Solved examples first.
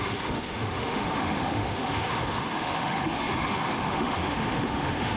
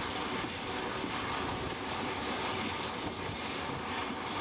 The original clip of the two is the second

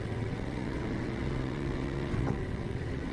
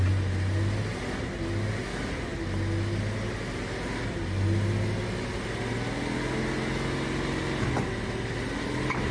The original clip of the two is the second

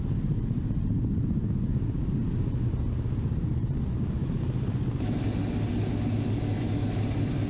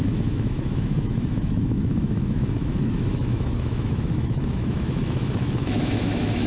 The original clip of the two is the first